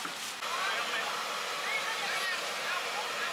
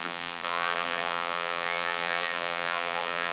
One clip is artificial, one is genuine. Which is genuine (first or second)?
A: first